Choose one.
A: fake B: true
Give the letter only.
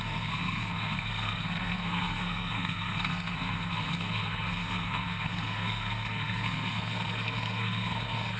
A